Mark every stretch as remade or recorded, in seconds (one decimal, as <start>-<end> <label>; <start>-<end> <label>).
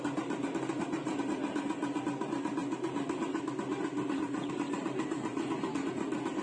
0.0-6.4 recorded